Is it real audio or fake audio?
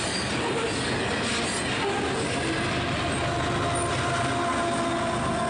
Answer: real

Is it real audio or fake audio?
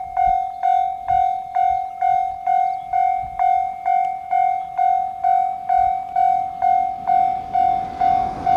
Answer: real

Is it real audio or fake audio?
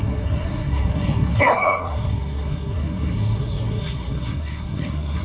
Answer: fake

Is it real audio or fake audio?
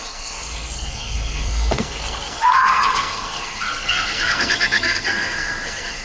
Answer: fake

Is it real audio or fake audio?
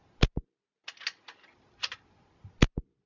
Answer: real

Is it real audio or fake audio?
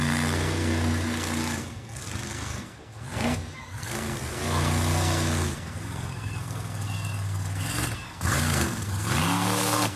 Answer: fake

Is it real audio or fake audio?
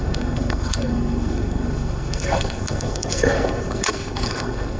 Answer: fake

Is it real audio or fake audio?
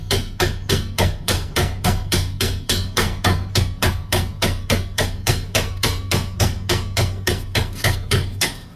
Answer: fake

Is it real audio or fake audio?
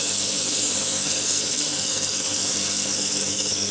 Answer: fake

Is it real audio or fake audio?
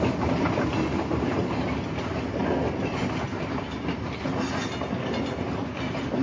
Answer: real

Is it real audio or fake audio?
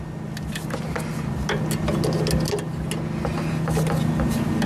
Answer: real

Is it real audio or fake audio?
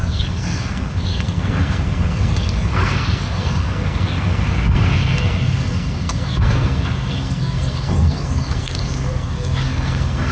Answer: fake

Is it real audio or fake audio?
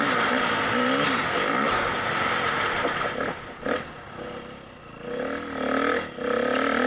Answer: real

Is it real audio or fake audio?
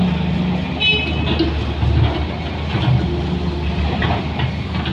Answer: real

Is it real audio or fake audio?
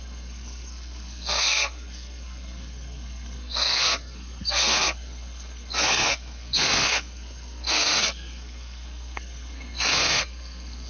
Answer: fake